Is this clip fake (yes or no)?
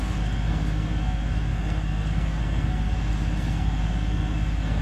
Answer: yes